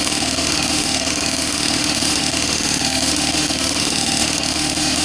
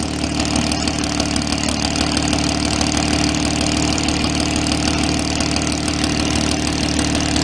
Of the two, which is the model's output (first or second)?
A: first